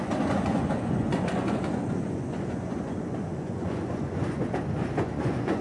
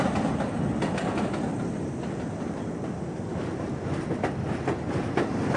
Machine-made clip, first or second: first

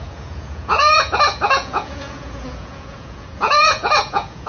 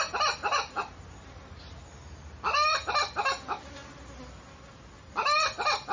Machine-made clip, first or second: first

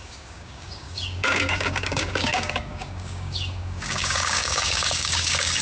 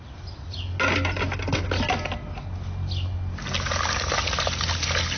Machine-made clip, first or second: first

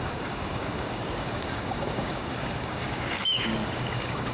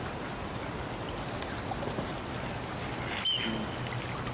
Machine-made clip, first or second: first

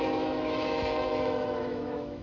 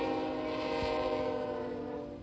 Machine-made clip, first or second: first